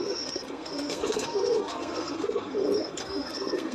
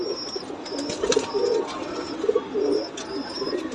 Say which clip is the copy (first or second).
first